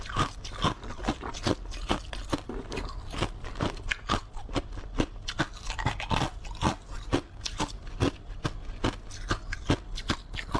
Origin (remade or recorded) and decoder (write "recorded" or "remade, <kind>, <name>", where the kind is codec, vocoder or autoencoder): recorded